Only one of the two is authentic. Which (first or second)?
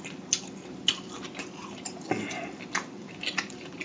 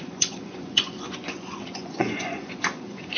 first